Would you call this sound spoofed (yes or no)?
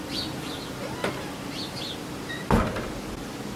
no